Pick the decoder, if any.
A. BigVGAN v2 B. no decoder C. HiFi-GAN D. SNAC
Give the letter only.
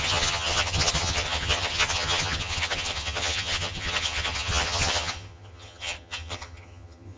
C